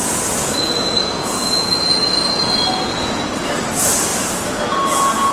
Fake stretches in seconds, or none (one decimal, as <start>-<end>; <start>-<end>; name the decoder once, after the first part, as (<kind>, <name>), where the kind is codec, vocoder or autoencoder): 0.0-3.2 (vocoder, Vocos)